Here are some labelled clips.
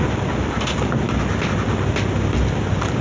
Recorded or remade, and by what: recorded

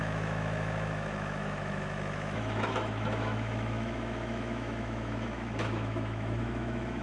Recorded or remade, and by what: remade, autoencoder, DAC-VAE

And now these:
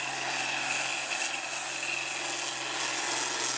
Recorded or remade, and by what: recorded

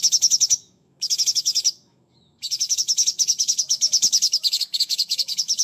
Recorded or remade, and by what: remade, autoencoder, DAC-VAE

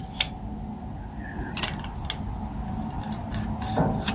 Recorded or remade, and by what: recorded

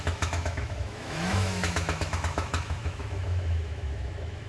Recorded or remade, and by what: remade, autoencoder, DAC-VAE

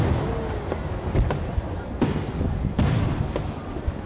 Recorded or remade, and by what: recorded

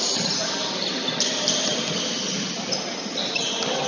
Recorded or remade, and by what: recorded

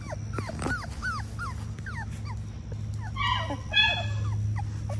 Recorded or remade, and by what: recorded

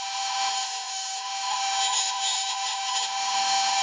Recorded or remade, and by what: remade, autoencoder, DAC-VAE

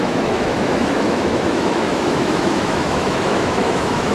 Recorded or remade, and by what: remade, autoencoder, DAC-VAE